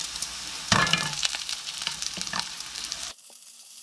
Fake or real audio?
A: fake